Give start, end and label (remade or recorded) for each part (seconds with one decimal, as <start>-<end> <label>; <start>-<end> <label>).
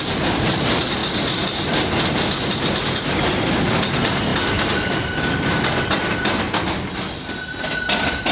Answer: 0.0-1.0 remade; 1.0-3.8 recorded; 3.8-4.3 remade; 4.3-7.4 recorded; 7.4-8.3 remade